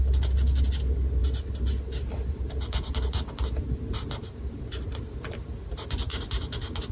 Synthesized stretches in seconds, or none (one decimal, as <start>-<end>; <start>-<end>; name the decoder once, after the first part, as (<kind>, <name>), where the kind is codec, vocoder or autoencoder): none